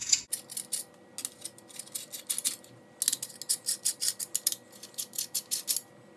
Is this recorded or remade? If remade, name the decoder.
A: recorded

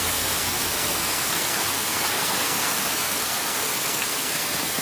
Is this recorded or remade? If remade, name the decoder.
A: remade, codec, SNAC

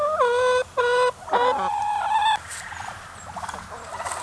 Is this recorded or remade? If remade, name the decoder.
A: recorded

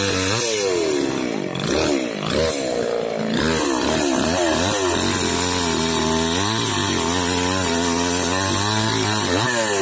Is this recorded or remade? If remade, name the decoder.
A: recorded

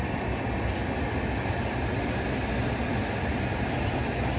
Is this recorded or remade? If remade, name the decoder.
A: recorded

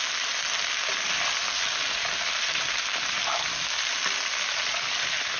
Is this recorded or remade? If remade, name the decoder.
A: recorded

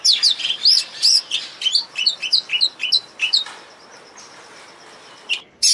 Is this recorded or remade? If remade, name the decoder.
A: recorded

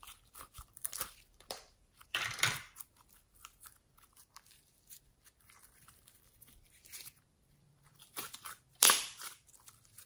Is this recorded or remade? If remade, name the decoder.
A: remade, vocoder, BigVGAN v2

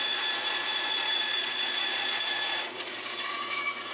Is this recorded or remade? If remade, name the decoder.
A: remade, vocoder, Vocos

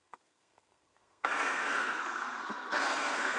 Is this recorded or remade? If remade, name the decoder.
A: remade, codec, SNAC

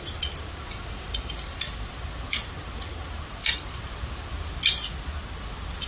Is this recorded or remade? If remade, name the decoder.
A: recorded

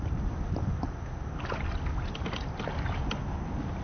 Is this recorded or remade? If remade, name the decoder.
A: recorded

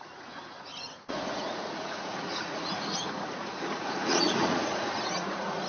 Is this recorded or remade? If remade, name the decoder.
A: remade, vocoder, Vocos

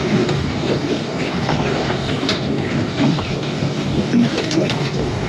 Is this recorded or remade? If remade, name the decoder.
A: remade, codec, DAC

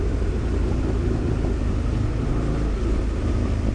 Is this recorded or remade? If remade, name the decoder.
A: recorded